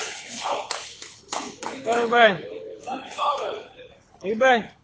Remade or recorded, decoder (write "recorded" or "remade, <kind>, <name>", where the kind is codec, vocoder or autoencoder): remade, codec, HILCodec